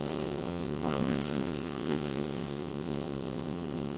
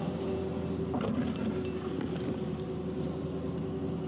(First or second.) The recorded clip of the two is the second